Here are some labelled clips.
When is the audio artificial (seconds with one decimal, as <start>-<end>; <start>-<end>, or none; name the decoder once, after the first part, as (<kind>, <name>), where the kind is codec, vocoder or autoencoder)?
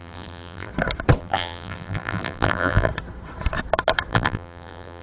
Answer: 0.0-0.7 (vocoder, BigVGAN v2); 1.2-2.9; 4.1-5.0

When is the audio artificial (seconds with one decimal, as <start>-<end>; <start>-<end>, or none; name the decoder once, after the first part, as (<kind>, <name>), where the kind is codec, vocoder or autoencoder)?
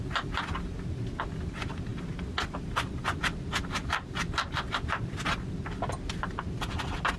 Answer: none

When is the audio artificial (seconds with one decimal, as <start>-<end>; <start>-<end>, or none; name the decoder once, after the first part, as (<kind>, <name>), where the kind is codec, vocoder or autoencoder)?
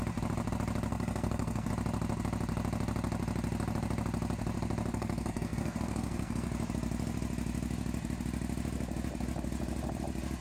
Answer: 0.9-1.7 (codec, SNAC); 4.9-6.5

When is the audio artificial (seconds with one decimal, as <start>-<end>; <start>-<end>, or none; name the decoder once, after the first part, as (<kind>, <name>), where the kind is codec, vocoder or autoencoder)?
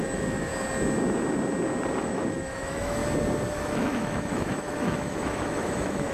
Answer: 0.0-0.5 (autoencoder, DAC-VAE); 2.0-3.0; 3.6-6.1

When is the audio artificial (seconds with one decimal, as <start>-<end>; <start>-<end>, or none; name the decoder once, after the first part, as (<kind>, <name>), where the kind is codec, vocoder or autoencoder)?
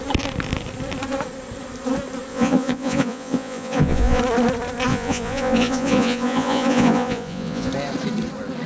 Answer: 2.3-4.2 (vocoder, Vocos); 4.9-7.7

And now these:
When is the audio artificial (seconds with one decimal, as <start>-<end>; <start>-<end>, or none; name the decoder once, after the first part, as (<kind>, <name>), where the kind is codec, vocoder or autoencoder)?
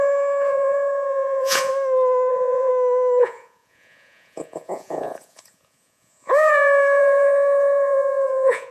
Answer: 0.0-1.7 (vocoder, Vocos); 2.3-2.7; 3.2-8.7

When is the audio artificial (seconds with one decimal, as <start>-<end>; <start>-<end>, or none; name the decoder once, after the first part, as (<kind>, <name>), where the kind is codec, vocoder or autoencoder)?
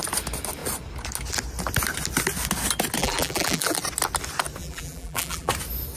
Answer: 3.0-3.8 (vocoder, BigVGAN v2); 4.6-5.5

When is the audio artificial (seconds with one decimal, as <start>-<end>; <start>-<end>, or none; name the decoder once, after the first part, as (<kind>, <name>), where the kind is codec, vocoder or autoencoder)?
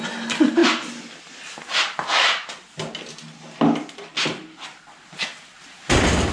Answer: none